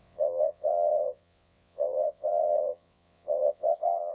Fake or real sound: fake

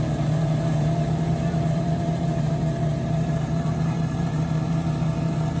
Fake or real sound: fake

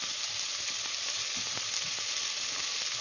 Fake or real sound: real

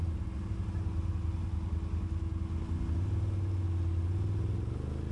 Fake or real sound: real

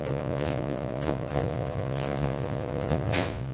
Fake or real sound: fake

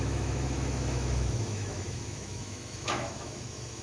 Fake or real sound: fake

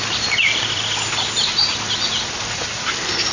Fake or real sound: real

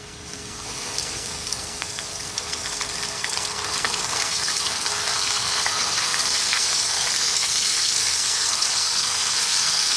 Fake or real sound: fake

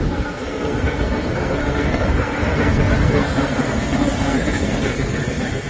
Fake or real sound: fake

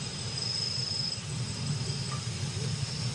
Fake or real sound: real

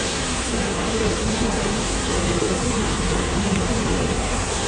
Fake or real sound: fake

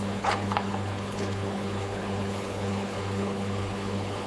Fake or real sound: fake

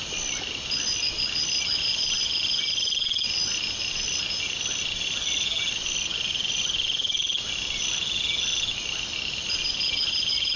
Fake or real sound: real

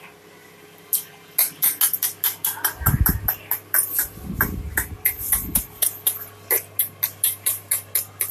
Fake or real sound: real